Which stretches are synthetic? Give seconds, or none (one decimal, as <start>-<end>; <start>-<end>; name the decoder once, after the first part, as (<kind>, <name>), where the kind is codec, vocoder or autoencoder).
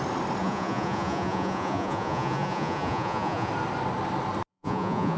0.4-3.5 (vocoder, Vocos); 4.5-5.2